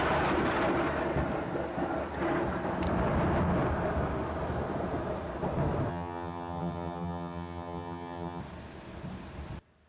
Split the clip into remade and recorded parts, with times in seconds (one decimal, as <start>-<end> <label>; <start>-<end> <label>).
0.0-5.9 recorded; 5.9-8.4 remade; 8.4-9.9 recorded